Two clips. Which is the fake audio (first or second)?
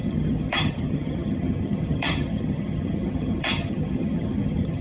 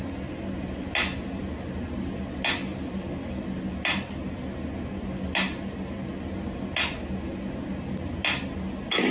first